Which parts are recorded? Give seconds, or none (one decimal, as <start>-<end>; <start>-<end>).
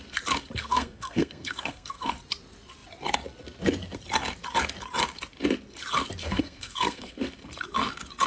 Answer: 0.0-0.6; 2.1-6.2; 7.2-8.3